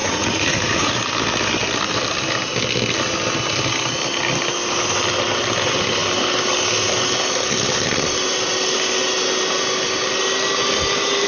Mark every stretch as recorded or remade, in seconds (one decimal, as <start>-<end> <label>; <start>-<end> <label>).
0.0-1.0 remade; 1.0-11.3 recorded